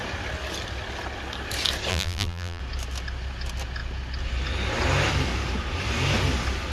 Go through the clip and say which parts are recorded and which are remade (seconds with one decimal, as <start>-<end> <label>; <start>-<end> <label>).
0.0-1.9 recorded; 1.9-2.6 remade; 2.6-6.7 recorded